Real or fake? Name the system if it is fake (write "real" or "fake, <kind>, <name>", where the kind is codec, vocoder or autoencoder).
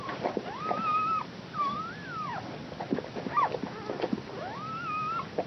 real